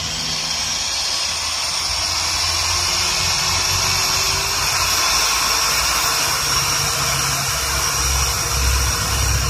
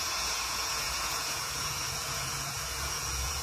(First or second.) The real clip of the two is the first